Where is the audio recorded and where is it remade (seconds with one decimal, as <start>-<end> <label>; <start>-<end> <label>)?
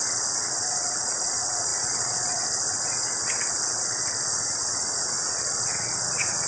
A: 0.0-6.5 remade